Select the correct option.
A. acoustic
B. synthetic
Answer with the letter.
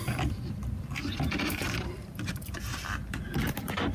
B